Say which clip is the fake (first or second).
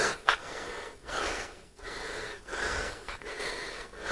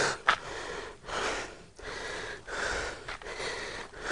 first